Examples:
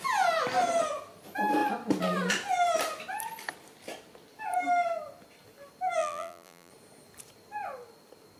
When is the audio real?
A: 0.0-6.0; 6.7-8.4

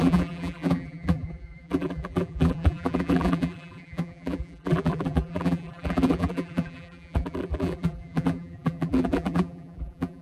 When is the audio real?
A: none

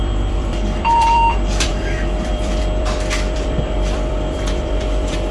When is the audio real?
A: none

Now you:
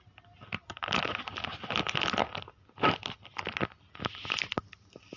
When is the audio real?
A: 0.0-5.2